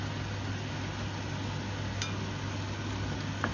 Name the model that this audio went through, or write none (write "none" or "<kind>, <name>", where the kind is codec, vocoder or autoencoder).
none